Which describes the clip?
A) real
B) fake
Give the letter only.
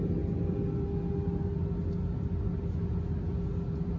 A